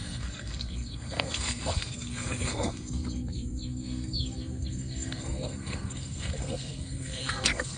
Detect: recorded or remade remade